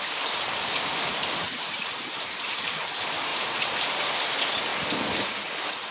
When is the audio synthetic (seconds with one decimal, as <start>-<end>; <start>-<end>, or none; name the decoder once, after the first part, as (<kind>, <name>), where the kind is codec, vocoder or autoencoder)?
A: 1.1-2.8 (vocoder, BigVGAN v2); 3.3-4.1